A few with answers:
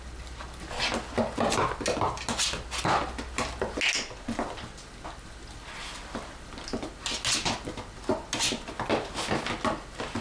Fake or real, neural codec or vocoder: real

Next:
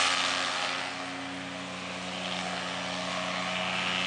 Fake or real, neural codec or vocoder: real